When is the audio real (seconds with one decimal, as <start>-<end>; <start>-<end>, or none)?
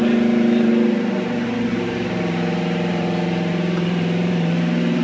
0.7-1.7